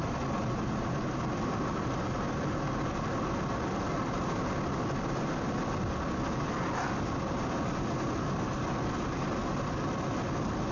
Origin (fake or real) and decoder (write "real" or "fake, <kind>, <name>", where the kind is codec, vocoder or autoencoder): real